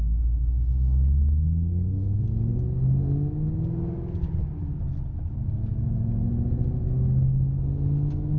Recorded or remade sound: recorded